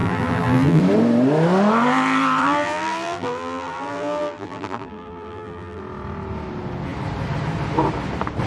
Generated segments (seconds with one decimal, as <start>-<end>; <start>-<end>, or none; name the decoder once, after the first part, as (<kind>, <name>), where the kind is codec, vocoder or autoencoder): 0.0-0.8 (vocoder, BigVGAN v2); 2.4-5.8